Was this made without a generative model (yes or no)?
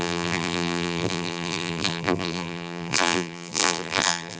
no